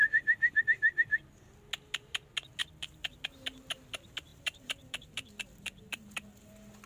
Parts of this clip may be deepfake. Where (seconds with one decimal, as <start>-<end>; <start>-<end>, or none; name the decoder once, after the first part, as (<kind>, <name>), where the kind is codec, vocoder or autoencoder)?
0.0-0.6 (vocoder, BigVGAN v2); 2.6-3.2; 4.3-6.5